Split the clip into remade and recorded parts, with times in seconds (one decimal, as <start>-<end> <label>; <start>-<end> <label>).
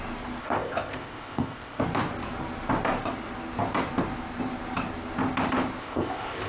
0.0-0.4 recorded; 0.4-1.8 remade; 1.8-5.8 recorded; 5.8-6.5 remade